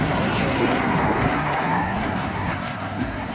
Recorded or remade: remade